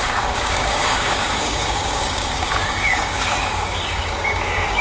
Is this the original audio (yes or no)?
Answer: no